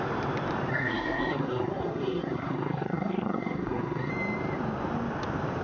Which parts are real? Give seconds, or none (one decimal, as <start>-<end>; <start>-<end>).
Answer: 0.0-0.7; 4.1-5.6